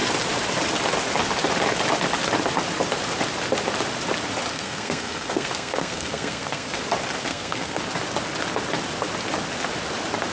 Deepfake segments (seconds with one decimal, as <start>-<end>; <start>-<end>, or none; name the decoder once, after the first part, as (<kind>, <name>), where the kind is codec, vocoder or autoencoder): 4.5-6.8 (codec, SNAC); 7.2-7.8